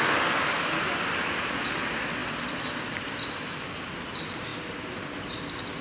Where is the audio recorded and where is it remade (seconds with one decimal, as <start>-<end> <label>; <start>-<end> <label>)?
0.0-5.8 recorded